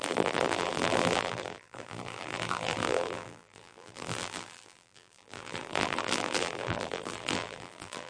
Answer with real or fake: fake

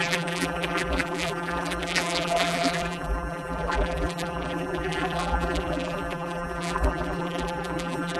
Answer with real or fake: fake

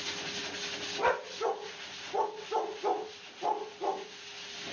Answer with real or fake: real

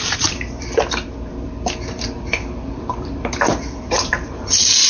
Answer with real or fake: fake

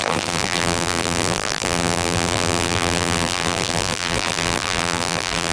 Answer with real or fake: fake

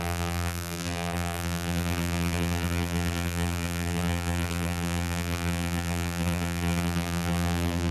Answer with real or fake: fake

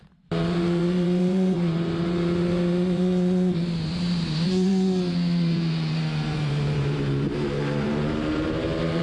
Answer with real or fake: fake